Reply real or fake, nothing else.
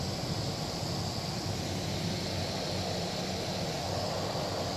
real